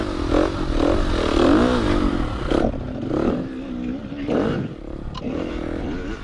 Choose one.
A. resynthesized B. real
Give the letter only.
B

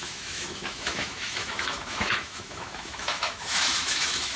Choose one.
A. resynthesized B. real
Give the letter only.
A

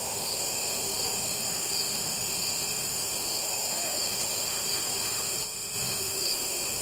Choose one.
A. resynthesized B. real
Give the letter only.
A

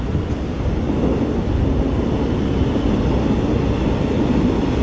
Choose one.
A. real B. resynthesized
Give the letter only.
A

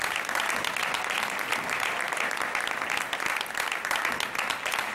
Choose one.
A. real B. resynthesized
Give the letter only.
A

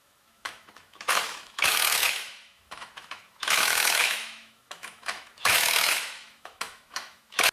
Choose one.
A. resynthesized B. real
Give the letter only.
A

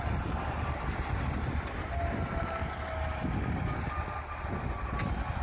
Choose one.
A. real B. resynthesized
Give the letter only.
A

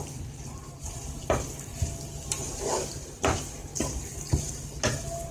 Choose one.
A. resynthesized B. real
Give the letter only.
B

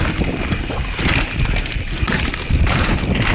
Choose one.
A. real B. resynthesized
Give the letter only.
A